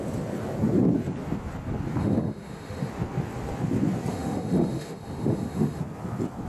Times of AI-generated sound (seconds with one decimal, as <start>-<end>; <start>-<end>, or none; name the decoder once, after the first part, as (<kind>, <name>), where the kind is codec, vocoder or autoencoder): 2.0-2.9 (autoencoder, DAC-VAE); 4.1-5.8